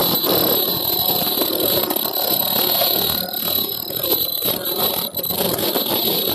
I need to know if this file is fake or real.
real